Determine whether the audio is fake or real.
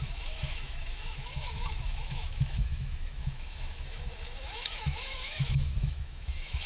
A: fake